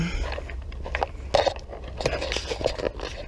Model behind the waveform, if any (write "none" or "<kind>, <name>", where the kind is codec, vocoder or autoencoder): none